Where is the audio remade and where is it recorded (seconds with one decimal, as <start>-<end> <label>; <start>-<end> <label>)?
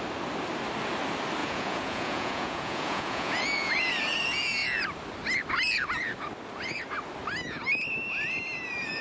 0.0-1.4 recorded; 1.4-3.7 remade; 3.7-9.0 recorded